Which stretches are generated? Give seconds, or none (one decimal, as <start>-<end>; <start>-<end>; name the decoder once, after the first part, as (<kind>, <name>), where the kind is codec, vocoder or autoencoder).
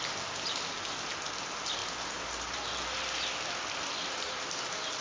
none